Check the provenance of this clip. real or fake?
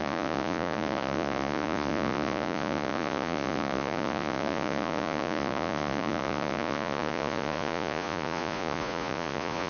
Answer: fake